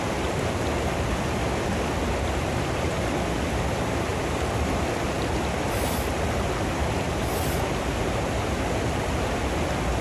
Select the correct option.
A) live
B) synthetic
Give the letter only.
A